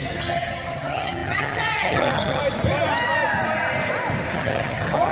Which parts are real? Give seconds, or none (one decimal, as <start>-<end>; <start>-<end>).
2.4-4.3

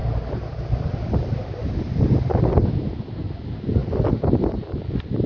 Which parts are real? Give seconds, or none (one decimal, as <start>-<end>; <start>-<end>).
0.0-5.3

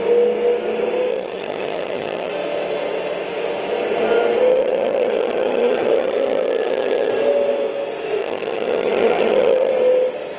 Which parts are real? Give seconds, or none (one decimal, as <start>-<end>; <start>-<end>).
0.0-1.1; 2.3-4.5; 7.1-8.2; 9.7-10.4

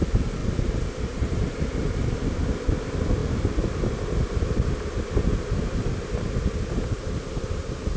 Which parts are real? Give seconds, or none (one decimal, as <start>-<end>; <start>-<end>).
0.0-8.0

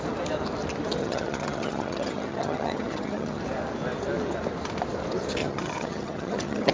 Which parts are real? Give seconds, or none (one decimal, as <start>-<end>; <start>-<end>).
0.0-1.0; 3.4-5.4

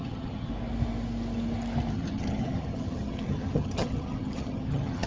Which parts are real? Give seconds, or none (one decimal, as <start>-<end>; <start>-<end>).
0.5-1.9

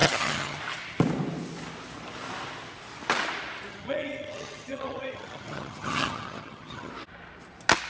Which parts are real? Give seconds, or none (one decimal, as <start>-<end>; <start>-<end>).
0.6-3.7; 6.9-7.9